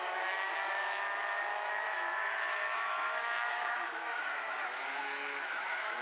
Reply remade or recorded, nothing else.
remade